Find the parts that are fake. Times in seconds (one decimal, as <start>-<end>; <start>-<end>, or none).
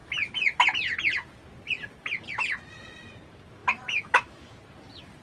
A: 3.6-4.6